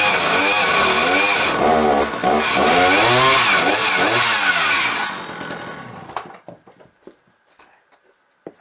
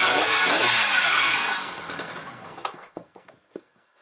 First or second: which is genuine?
first